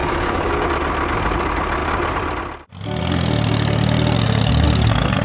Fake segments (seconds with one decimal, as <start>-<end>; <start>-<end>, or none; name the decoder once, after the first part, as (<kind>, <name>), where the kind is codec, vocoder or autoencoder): 0.0-0.5 (codec, DAC)